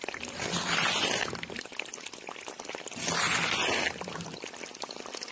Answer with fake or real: real